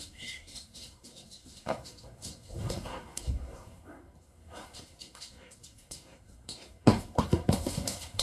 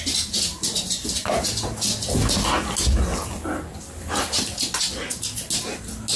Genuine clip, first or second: second